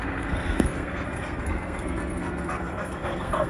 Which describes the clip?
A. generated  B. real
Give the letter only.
A